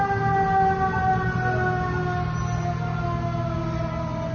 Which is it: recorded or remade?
recorded